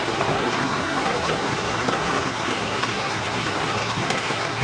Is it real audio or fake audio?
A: fake